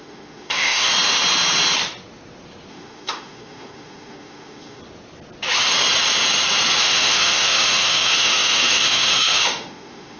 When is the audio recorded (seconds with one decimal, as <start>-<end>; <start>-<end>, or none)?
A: 0.9-2.7; 4.8-6.8